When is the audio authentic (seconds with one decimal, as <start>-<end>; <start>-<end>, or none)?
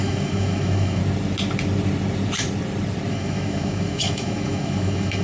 1.0-3.1